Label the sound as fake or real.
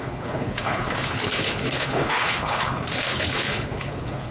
fake